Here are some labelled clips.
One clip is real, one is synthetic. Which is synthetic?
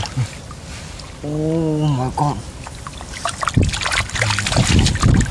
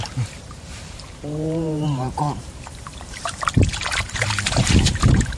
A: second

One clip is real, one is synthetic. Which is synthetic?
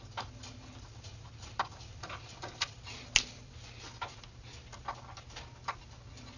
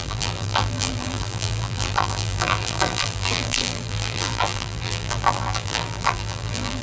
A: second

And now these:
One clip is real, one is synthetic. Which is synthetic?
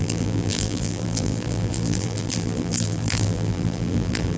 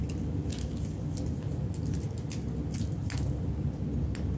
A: first